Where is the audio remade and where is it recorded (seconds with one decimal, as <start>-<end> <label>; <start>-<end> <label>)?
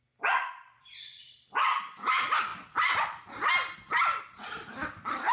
0.0-2.5 remade; 2.5-4.7 recorded; 4.7-5.3 remade